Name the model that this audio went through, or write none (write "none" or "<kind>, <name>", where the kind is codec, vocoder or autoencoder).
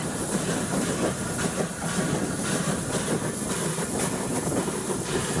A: none